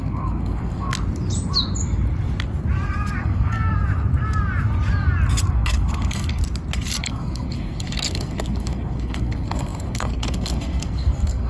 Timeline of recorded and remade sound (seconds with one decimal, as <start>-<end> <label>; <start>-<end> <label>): 0.0-0.9 remade; 0.9-3.2 recorded; 3.2-3.7 remade; 3.7-5.5 recorded; 5.5-6.4 remade; 6.4-7.0 recorded; 7.0-11.5 remade